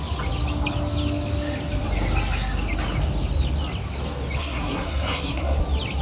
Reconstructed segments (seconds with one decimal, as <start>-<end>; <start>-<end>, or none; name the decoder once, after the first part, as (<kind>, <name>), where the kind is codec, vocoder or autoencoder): 4.4-5.6 (codec, SNAC)